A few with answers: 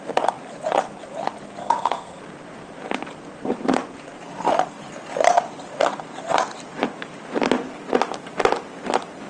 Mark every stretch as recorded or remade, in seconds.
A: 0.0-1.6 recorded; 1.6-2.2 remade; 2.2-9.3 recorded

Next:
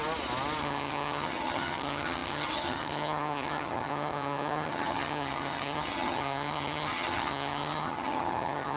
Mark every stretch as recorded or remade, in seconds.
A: 0.0-0.6 recorded; 0.6-8.8 remade

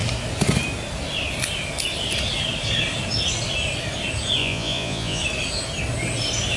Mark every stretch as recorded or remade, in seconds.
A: 0.0-4.4 recorded; 4.4-5.2 remade; 5.2-6.6 recorded

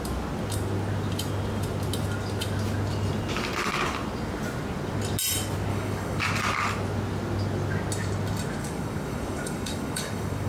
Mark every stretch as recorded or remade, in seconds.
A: 0.0-5.7 recorded; 5.7-6.2 remade; 6.2-8.6 recorded; 8.6-10.5 remade

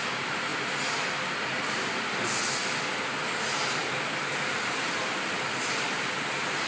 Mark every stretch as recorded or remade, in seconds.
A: 0.0-6.7 recorded